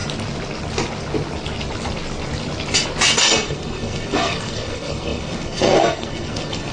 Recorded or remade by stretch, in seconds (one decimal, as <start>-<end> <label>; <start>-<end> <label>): 0.0-3.2 recorded; 3.2-6.7 remade